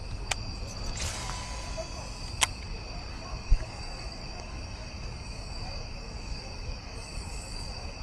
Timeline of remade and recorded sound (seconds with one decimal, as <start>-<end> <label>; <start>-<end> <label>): 0.0-3.1 recorded; 3.1-8.0 remade